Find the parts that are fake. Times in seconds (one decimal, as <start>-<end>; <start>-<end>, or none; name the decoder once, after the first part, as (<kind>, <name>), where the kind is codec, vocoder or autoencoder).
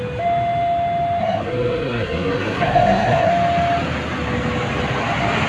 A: 1.2-3.3 (codec, SNAC)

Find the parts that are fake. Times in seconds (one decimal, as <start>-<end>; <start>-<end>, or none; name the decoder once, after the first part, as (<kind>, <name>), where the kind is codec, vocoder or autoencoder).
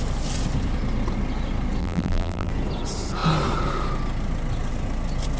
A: 1.8-2.5 (vocoder, BigVGAN v2)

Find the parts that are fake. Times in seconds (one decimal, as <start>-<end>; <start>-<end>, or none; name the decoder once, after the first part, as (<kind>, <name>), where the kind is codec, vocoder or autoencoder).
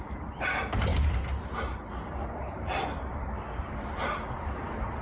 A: 0.9-3.0 (vocoder, BigVGAN v2)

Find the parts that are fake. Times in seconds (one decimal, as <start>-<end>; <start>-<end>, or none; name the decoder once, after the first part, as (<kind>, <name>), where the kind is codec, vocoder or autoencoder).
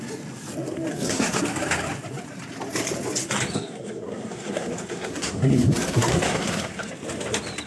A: 0.9-1.4 (codec, SNAC); 3.5-6.9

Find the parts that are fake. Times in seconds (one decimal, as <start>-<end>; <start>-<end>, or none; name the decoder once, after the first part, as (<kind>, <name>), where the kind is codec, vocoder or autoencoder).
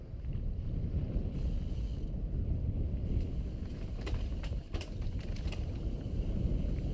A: 3.7-6.5 (vocoder, BigVGAN v2)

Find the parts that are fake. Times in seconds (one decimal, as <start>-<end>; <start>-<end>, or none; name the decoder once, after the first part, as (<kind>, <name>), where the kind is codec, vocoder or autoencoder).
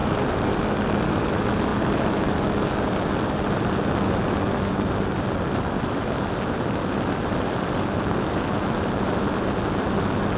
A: none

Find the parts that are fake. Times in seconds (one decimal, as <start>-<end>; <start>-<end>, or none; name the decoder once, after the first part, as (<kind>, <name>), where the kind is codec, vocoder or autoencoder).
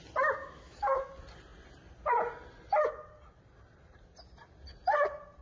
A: 0.4-1.1 (autoencoder, DAC-VAE)